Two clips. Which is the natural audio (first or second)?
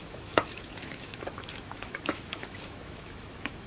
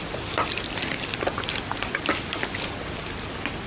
second